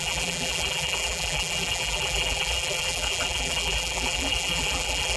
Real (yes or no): no